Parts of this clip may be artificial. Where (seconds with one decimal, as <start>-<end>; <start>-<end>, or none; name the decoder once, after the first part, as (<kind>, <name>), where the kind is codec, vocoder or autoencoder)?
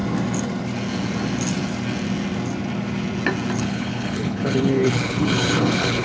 3.6-6.0 (codec, HILCodec)